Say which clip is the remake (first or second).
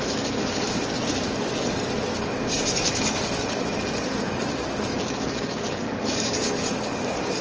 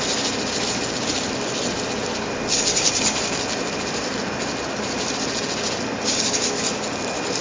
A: first